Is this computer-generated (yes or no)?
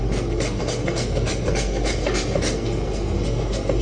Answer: yes